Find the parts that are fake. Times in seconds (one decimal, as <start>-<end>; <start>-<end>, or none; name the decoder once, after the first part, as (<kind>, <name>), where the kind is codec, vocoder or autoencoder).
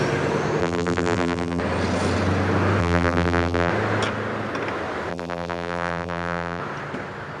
0.6-1.6 (vocoder, BigVGAN v2); 2.8-3.7; 5.1-6.6